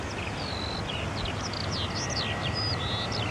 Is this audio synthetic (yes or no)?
no